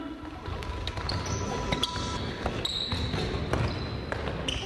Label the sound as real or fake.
real